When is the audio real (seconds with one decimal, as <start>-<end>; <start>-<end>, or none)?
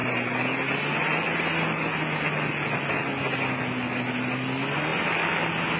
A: 0.0-5.8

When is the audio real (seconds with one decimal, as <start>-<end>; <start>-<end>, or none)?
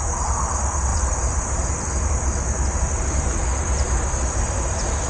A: 0.0-0.9; 1.7-5.1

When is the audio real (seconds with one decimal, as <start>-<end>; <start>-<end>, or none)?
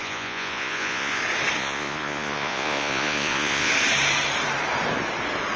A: 1.2-1.6; 3.7-5.6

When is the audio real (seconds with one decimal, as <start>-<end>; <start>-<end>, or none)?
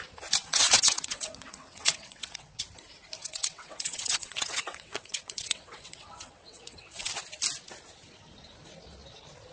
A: 0.0-0.4; 2.6-3.2; 7.1-9.5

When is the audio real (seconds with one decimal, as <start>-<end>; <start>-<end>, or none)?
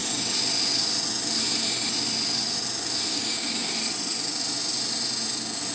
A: 0.0-3.1; 3.7-5.7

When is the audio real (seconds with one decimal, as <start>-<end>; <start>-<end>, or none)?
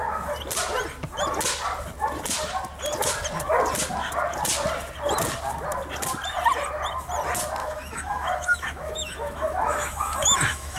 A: 0.0-7.6